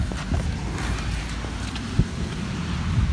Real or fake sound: real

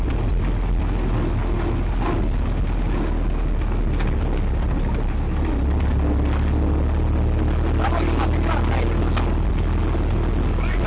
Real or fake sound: real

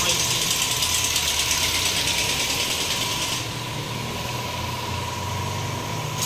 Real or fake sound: real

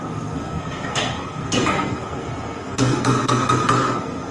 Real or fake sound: fake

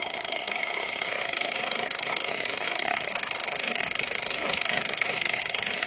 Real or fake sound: fake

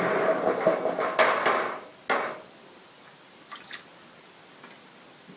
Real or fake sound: real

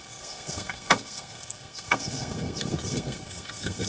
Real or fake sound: fake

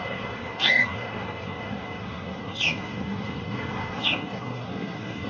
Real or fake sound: fake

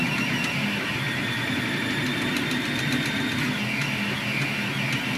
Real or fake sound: real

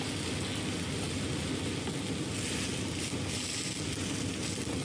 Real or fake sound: real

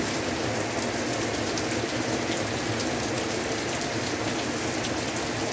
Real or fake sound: real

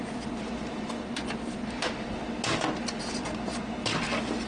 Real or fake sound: real